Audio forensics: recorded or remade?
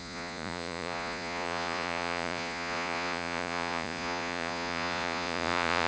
remade